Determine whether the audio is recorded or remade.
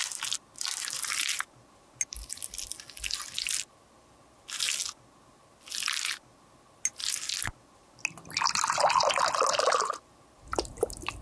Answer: recorded